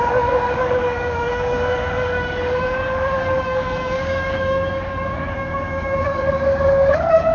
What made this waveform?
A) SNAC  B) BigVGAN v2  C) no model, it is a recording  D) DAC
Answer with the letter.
D